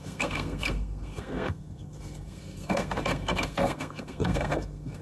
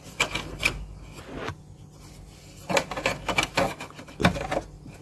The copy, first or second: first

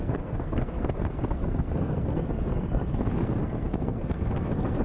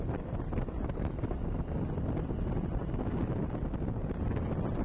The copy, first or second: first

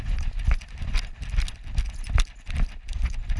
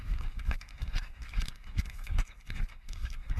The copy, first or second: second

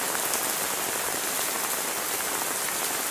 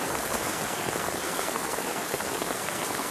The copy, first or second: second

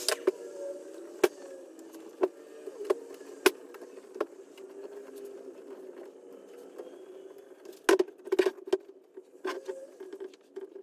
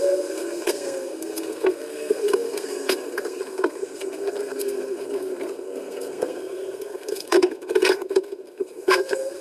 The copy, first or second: second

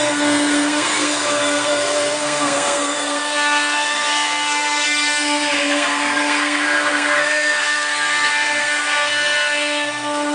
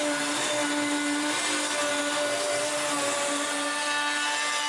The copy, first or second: first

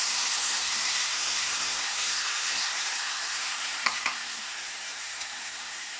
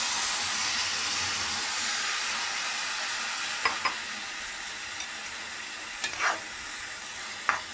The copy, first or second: first